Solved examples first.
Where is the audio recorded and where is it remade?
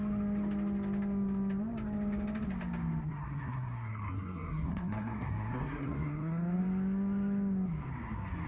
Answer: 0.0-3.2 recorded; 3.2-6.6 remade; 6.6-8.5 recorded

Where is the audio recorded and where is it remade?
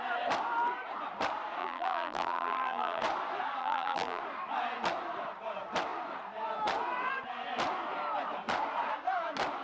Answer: 0.0-1.6 recorded; 1.6-3.0 remade; 3.0-3.6 recorded; 3.6-4.2 remade; 4.2-9.6 recorded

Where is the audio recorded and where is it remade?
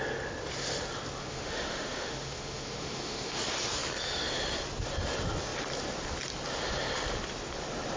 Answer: 0.0-1.2 recorded; 1.2-3.4 remade; 3.4-8.0 recorded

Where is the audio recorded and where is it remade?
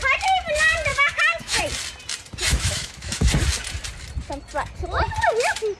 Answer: 0.0-0.9 recorded; 0.9-1.6 remade; 1.6-2.5 recorded; 2.5-3.3 remade; 3.3-5.8 recorded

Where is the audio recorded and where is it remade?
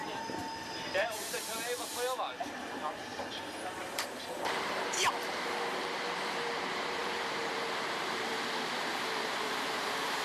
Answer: 0.0-1.5 remade; 1.5-2.6 recorded; 2.6-3.1 remade; 3.1-3.8 recorded; 3.8-10.2 remade